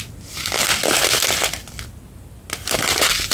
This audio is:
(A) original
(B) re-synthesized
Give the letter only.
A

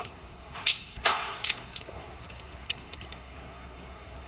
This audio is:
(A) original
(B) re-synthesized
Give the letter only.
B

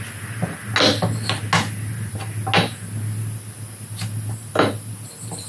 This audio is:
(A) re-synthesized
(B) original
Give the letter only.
B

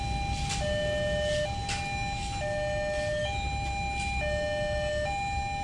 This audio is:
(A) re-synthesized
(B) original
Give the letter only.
B